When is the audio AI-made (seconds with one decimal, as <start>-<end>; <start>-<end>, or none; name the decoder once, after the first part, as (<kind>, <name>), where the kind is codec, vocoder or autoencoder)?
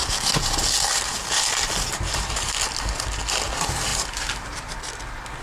3.9-5.0 (vocoder, BigVGAN v2)